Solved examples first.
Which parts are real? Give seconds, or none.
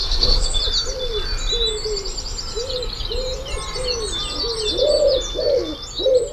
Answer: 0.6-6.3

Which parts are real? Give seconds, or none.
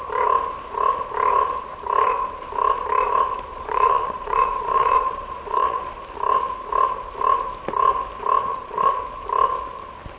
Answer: 0.0-3.5; 6.0-8.5; 9.0-10.2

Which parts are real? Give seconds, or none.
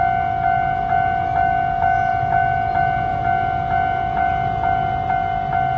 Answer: 0.0-5.8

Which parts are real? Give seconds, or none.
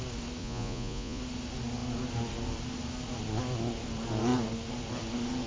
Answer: 0.0-0.4; 1.2-5.5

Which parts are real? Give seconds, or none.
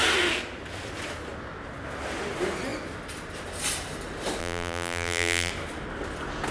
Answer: 0.0-4.4; 5.5-6.5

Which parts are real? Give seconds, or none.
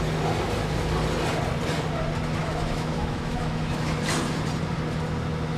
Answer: 0.0-2.4; 3.9-5.6